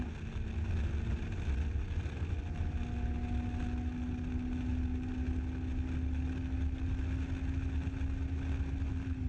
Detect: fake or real real